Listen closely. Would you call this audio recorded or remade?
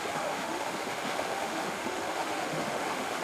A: remade